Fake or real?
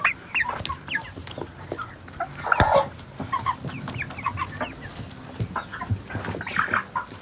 real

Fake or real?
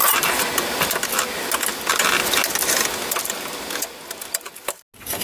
real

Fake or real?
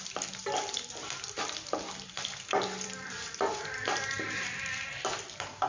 fake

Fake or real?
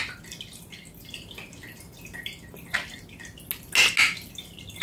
real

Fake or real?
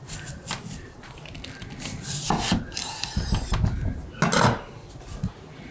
real